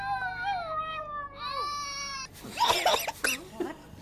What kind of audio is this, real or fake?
real